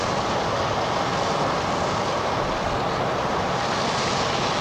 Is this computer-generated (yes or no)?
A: no